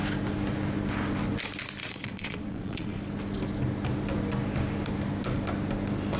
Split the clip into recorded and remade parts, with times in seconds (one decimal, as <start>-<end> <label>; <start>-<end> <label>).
0.0-1.8 recorded; 1.8-3.0 remade; 3.0-6.2 recorded